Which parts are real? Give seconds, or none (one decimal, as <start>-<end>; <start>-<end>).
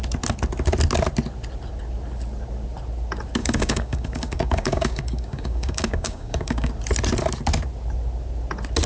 0.0-3.4; 6.7-8.9